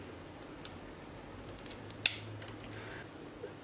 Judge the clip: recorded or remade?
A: recorded